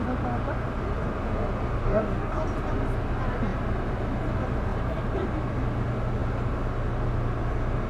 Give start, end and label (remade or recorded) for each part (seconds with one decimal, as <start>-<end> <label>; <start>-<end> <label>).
0.0-1.8 recorded; 1.8-2.4 remade; 2.4-7.9 recorded